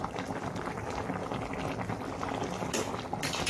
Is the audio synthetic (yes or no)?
no